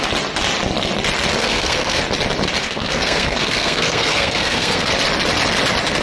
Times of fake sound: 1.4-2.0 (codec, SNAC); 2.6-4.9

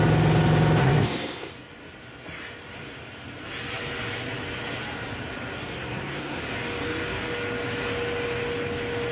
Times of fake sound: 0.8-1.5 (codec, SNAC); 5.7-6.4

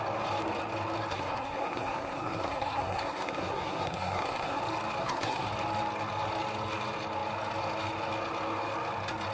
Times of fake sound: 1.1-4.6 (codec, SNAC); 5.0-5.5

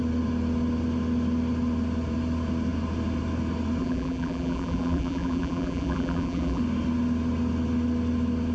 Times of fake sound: 3.8-6.6 (vocoder, BigVGAN v2)

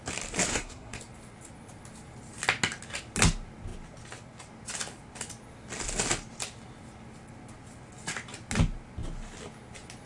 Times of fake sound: 0.5-1.0 (codec, SNAC)

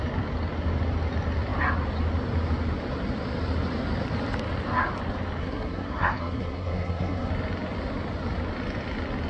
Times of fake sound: 5.4-7.3 (codec, SNAC)

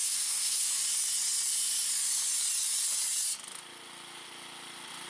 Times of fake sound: 0.0-0.7 (codec, SNAC)